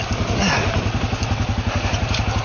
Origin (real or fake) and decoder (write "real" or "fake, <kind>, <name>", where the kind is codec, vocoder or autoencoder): real